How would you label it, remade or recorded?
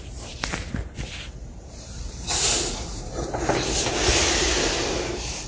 remade